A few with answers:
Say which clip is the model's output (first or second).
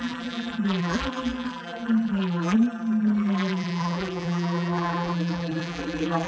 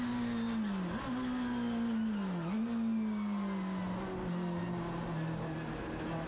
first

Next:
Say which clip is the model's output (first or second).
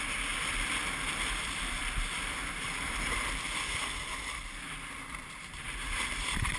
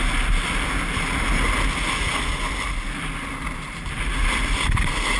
first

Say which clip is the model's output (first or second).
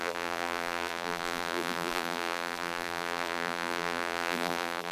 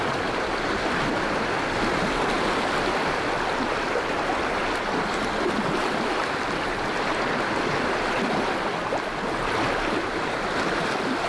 first